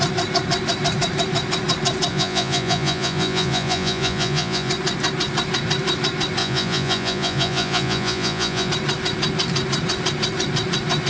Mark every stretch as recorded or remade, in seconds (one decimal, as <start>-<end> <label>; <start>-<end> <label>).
0.0-2.1 recorded; 2.1-4.7 remade; 4.7-6.4 recorded; 6.4-8.7 remade; 8.7-11.1 recorded